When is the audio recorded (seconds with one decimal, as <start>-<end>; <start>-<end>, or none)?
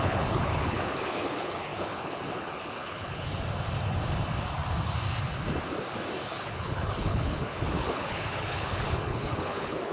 3.3-6.2